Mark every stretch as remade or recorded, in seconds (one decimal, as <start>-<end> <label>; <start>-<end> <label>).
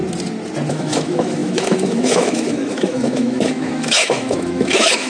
0.0-0.7 recorded; 0.7-5.1 remade